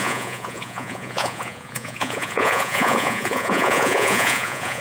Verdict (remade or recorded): remade